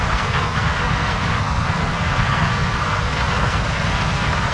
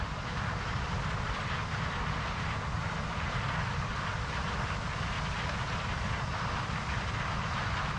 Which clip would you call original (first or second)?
second